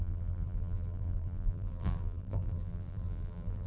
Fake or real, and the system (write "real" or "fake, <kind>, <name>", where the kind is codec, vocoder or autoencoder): fake, vocoder, BigVGAN v2